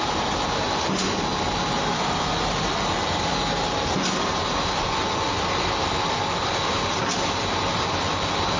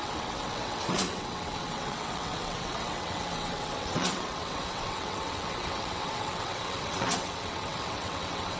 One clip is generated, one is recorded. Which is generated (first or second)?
second